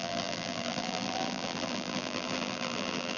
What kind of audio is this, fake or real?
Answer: fake